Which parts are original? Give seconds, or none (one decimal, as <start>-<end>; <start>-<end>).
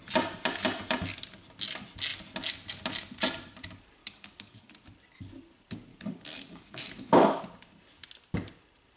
0.0-4.0; 4.7-5.9; 7.4-9.0